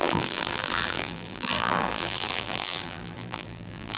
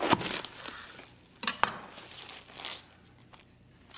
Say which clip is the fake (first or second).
first